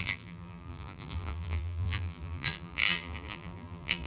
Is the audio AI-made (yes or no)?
yes